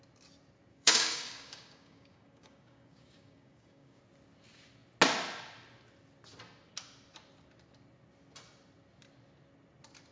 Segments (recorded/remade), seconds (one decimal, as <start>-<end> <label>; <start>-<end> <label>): 0.0-0.7 recorded; 0.7-4.0 remade; 4.0-10.1 recorded